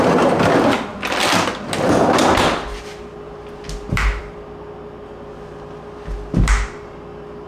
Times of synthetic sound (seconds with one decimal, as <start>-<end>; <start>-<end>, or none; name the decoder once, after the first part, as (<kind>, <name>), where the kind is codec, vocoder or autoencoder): none